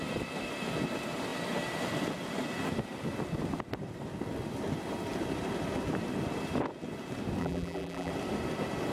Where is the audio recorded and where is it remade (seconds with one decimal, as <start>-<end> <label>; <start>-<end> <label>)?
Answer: 0.0-7.4 recorded; 7.4-8.1 remade; 8.1-8.9 recorded